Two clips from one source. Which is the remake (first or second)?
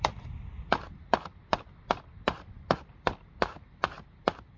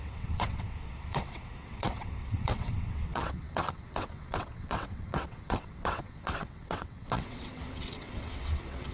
second